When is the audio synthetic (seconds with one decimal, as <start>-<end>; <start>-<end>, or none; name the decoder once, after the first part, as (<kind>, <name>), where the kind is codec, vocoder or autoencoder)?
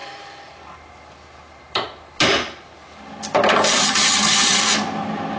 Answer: 3.8-4.6 (vocoder, HiFi-GAN)